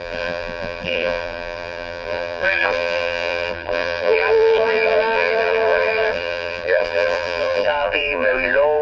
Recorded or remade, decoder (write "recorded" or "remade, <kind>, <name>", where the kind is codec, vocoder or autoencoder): remade, vocoder, BigVGAN v2